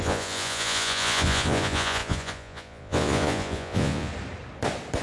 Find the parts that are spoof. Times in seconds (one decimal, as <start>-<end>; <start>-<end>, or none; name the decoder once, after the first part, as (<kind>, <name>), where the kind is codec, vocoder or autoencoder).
0.0-4.1 (vocoder, Vocos)